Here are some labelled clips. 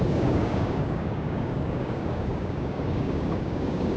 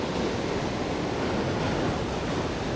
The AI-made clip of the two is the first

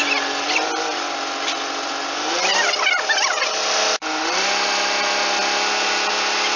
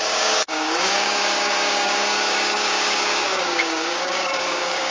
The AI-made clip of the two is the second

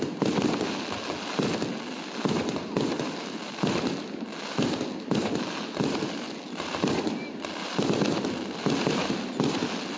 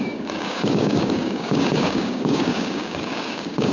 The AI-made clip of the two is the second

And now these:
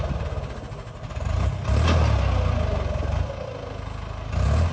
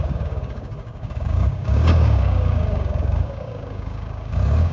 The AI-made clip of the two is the second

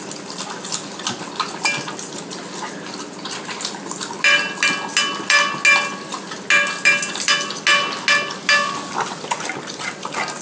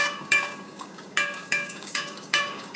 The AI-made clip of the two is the second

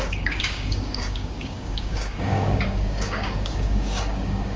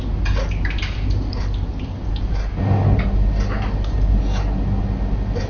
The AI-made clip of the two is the first